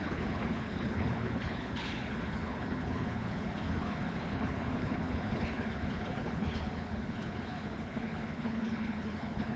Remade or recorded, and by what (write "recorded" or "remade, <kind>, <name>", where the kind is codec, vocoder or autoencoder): remade, codec, HILCodec